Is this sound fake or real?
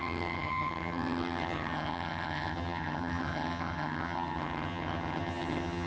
fake